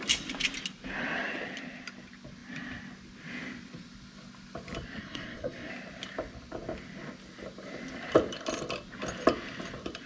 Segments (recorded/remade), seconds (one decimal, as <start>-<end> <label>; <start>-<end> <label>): 0.0-5.0 recorded; 5.0-5.7 remade; 5.7-10.1 recorded